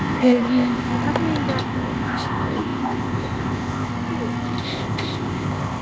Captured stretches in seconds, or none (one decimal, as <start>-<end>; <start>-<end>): 0.9-1.6; 3.9-4.6